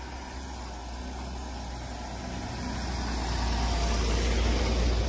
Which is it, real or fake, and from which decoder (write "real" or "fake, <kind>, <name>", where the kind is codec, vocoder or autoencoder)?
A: real